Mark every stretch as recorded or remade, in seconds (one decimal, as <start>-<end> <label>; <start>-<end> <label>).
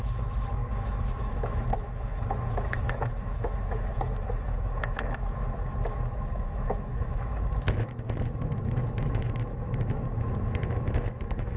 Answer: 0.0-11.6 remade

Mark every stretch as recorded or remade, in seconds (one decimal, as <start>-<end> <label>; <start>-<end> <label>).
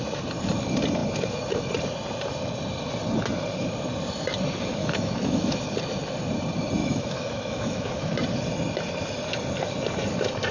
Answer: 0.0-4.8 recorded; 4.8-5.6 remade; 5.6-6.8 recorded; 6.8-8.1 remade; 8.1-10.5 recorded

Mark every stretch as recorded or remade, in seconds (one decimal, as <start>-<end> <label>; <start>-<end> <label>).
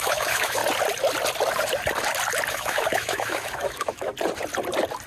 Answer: 0.0-0.6 remade; 0.6-2.5 recorded; 2.5-4.1 remade; 4.1-5.1 recorded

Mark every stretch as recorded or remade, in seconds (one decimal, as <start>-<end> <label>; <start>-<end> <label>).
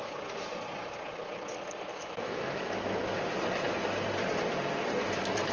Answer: 0.0-1.9 recorded; 1.9-3.0 remade; 3.0-5.5 recorded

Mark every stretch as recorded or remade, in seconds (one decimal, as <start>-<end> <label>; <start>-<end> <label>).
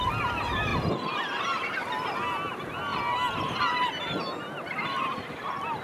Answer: 0.0-5.8 recorded